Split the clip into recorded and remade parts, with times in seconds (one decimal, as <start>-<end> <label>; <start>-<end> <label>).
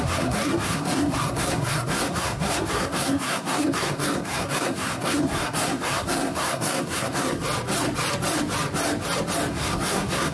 0.0-7.4 remade; 7.4-9.5 recorded; 9.5-10.3 remade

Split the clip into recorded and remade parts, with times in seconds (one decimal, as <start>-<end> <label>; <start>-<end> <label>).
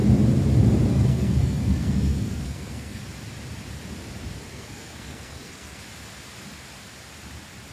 0.0-0.9 recorded; 0.9-3.0 remade; 3.0-4.5 recorded; 4.5-5.8 remade; 5.8-7.7 recorded